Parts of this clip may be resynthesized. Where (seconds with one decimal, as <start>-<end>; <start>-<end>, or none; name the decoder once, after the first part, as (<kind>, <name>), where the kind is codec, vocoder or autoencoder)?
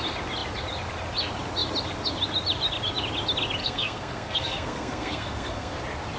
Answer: 3.6-5.8 (codec, SNAC)